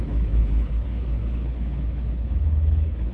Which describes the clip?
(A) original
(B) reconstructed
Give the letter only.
B